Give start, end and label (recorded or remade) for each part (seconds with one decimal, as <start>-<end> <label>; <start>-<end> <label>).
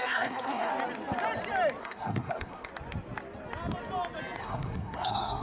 0.0-0.7 remade; 0.7-1.8 recorded; 1.8-2.7 remade; 2.7-4.4 recorded; 4.4-5.4 remade